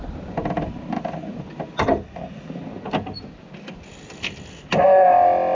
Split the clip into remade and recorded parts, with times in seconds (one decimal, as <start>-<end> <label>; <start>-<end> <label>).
0.0-5.5 recorded